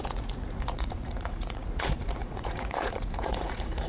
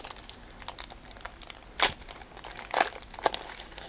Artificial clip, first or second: first